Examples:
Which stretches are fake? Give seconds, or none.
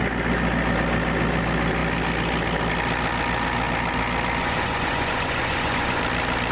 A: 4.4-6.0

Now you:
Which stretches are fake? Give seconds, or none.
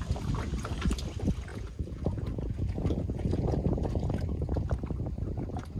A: 1.5-4.7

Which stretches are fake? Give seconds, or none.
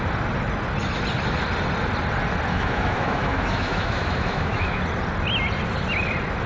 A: 2.5-4.8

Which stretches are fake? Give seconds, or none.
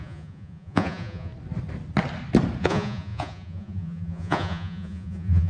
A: 0.0-1.3; 2.6-5.5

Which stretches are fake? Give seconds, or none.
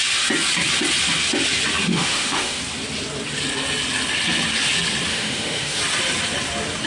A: 1.9-2.6; 5.1-5.8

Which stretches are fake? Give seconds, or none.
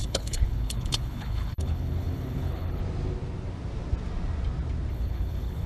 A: 0.0-2.8; 4.9-5.7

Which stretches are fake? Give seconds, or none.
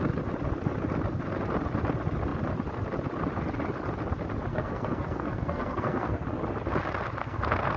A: 4.5-6.2; 7.2-7.8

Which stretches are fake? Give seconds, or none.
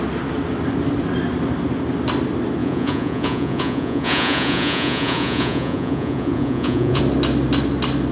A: 2.6-7.0